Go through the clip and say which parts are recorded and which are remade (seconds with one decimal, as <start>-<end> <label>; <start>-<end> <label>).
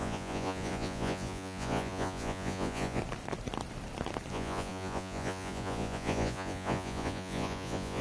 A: 0.0-3.0 remade; 3.0-4.3 recorded; 4.3-8.0 remade